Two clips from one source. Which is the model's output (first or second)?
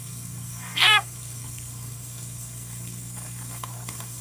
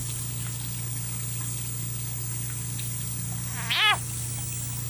first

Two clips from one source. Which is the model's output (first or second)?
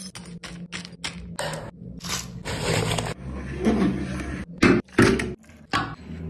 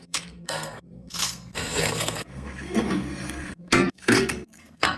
second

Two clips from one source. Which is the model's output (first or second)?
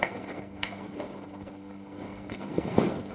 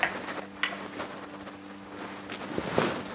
first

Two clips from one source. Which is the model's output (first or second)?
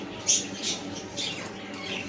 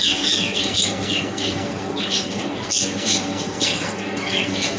second